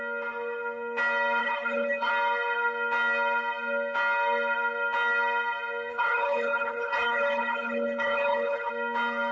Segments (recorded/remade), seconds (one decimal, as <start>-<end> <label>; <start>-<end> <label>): 0.0-1.4 recorded; 1.4-2.1 remade; 2.1-5.9 recorded; 5.9-8.7 remade; 8.7-9.3 recorded